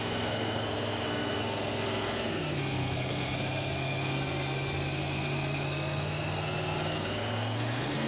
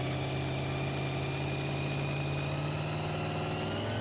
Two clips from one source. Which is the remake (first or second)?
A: first